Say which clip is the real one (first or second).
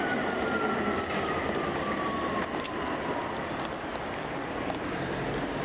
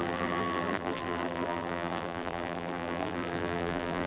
first